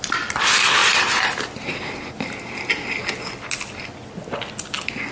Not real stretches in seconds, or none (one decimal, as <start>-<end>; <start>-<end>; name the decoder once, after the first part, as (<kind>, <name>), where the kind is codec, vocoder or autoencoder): none